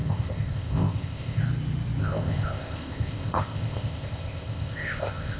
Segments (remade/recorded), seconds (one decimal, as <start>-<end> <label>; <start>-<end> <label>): 0.0-1.4 remade; 1.4-2.0 recorded; 2.0-5.4 remade